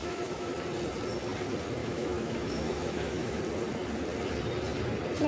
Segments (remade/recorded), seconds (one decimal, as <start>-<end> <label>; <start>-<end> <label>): 0.0-0.5 remade; 0.5-1.8 recorded; 1.8-3.4 remade; 3.4-5.3 recorded